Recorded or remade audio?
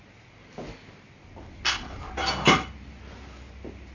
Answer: recorded